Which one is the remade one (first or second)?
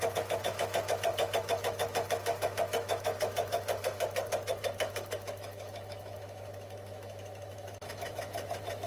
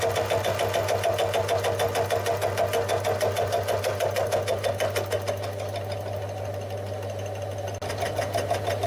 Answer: first